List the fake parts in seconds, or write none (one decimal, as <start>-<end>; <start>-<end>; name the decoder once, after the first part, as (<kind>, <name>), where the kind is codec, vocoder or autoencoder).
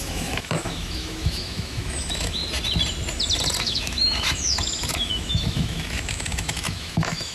0.0-2.4 (autoencoder, DAC-VAE); 3.6-7.3